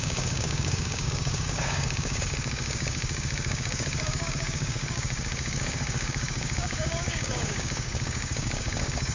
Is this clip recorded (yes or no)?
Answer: no